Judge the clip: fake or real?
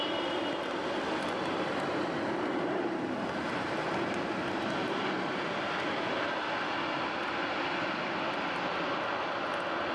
real